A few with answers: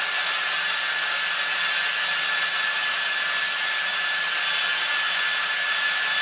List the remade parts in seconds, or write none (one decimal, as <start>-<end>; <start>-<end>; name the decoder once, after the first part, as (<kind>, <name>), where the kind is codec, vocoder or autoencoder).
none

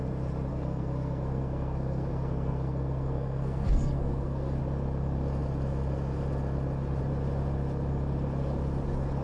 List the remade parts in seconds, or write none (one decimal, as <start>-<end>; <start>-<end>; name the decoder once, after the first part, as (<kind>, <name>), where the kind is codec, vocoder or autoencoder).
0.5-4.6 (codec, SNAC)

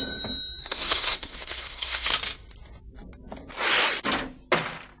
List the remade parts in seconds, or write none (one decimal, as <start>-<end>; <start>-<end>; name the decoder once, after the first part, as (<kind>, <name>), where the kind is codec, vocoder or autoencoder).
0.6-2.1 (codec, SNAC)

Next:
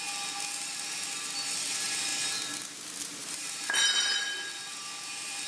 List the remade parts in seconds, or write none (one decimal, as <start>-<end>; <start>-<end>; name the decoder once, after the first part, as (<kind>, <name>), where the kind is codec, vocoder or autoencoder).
none

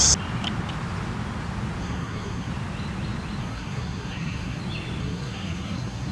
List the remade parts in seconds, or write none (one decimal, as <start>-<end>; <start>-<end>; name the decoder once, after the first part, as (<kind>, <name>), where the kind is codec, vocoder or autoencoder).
1.8-2.5 (codec, SNAC); 3.4-4.6; 5.0-6.1